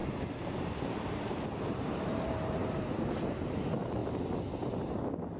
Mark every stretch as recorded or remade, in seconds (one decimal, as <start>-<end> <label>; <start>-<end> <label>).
0.0-3.2 remade; 3.2-5.4 recorded